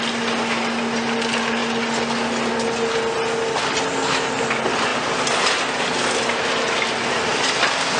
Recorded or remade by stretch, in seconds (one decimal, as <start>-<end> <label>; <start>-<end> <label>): 0.0-8.0 recorded